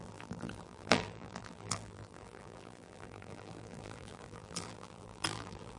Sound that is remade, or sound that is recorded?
remade